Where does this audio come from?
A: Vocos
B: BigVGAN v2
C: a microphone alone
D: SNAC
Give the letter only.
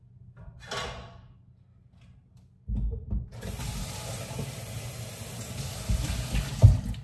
C